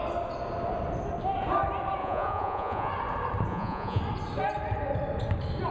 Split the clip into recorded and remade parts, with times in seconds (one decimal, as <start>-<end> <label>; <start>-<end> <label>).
0.0-2.0 recorded; 2.0-2.9 remade; 2.9-3.5 recorded; 3.5-4.0 remade; 4.0-5.7 recorded